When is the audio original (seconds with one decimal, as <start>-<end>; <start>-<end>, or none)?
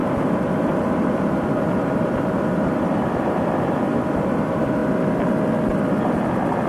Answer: 4.8-6.0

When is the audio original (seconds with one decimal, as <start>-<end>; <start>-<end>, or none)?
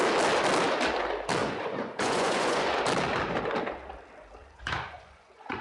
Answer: 0.0-1.4; 2.8-4.4